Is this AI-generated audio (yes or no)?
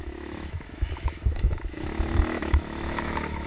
yes